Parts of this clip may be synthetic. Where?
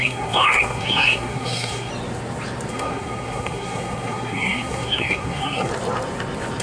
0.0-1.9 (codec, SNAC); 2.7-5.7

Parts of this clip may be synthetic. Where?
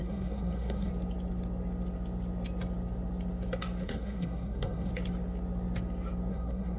0.0-0.9 (codec, SNAC); 3.8-4.9; 6.3-6.8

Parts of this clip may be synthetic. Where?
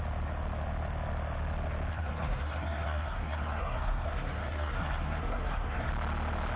1.9-5.9 (codec, SNAC)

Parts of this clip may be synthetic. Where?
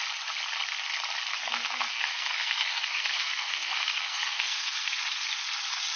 1.3-4.9 (codec, SNAC)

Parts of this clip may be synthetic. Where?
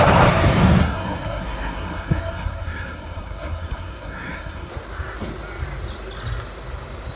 0.8-4.7 (codec, SNAC)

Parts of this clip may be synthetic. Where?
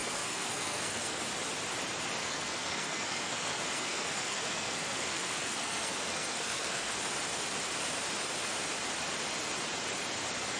0.0-1.2 (codec, SNAC); 2.2-7.0